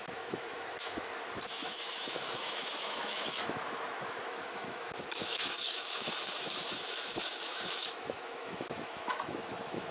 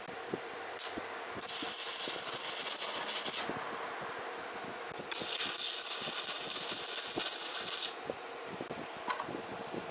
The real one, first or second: second